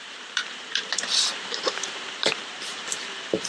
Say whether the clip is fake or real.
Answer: fake